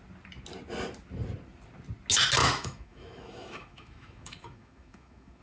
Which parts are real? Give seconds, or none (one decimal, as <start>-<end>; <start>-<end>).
0.0-2.4